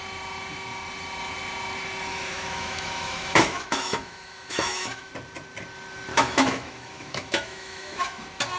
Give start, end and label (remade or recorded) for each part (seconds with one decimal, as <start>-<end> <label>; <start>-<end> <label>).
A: 0.0-2.1 recorded; 2.1-5.1 remade; 5.1-6.1 recorded; 6.1-8.2 remade; 8.2-8.6 recorded

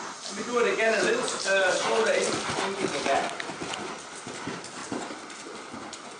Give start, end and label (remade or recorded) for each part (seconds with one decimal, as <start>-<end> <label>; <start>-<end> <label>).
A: 0.0-6.2 recorded